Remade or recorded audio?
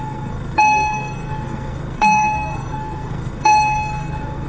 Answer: remade